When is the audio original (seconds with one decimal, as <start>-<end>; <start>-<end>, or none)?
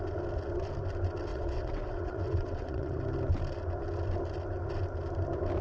0.0-1.3; 3.0-5.6